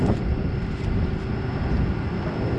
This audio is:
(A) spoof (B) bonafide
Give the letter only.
B